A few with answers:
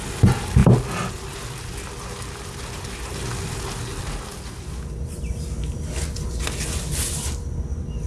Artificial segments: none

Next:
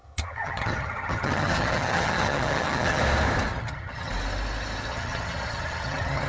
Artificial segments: 0.0-3.0 (vocoder, HiFi-GAN); 3.5-4.1; 4.9-6.3

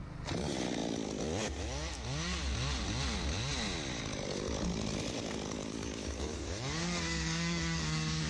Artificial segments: 5.6-8.3 (codec, DAC)

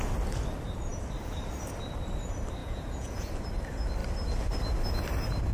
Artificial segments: 2.6-3.3 (vocoder, Vocos)

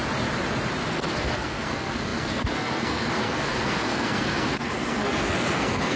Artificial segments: 0.9-6.0 (codec, SNAC)

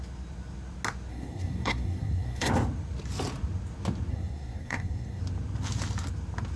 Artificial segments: 1.1-2.5 (codec, SNAC); 4.1-5.2

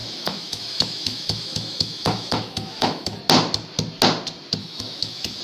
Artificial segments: 0.0-3.2 (autoencoder, DAC-VAE); 4.6-5.4